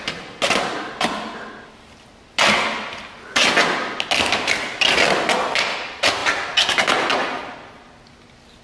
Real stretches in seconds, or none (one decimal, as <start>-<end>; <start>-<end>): 0.0-8.6